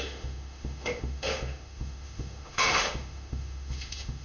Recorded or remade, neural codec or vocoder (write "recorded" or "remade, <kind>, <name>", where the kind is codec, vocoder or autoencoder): remade, autoencoder, DAC-VAE